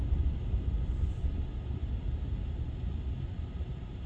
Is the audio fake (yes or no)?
no